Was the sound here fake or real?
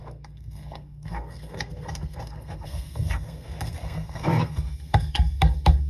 fake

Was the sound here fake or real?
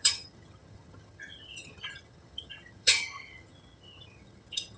fake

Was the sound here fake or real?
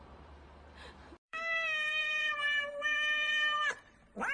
fake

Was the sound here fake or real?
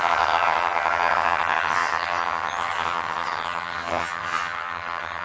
fake